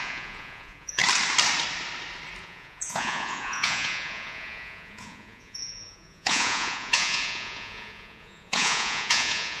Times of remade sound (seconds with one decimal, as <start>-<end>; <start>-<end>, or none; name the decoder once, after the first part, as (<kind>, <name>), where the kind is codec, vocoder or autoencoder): 0.0-1.0 (vocoder, Vocos); 2.4-9.6